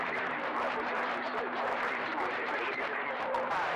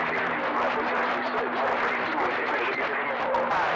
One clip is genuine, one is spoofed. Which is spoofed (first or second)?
first